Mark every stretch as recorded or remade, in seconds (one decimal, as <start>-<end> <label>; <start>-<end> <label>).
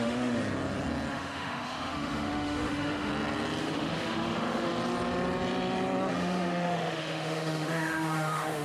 0.0-0.4 remade; 0.4-1.1 recorded; 1.1-3.1 remade; 3.1-3.6 recorded; 3.6-4.7 remade; 4.7-6.1 recorded; 6.1-8.6 remade